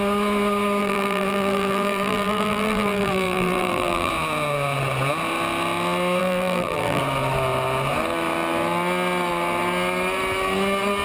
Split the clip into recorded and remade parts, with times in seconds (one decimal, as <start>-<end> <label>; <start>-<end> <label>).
0.0-0.8 recorded; 0.8-4.1 remade; 4.1-6.2 recorded; 6.2-7.0 remade; 7.0-11.0 recorded